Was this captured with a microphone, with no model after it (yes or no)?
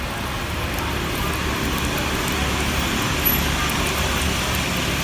yes